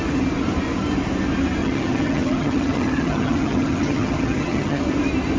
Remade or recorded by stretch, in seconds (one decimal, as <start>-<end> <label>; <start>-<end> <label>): 0.0-1.6 recorded; 1.6-4.8 remade; 4.8-5.4 recorded